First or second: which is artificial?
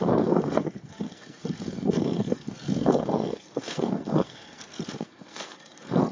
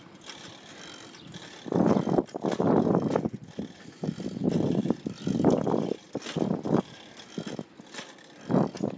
first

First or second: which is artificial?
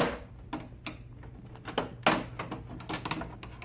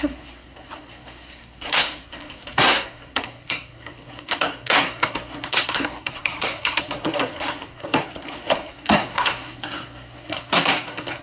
second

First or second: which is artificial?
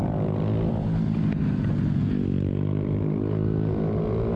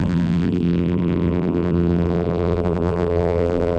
second